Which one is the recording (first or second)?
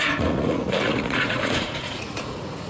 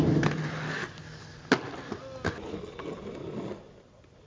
second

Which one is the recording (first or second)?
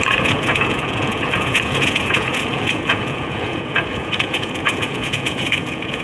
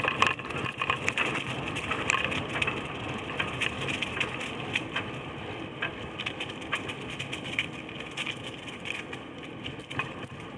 second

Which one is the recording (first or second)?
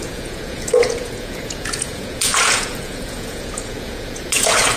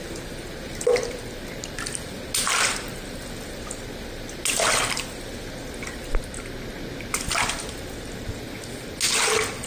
second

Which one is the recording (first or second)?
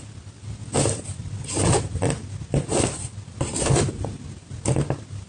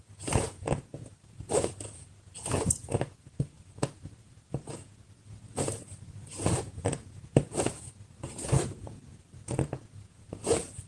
first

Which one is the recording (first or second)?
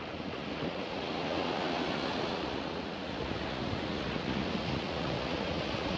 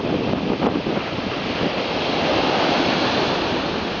second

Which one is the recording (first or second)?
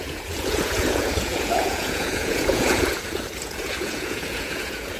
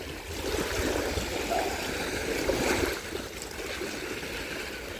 second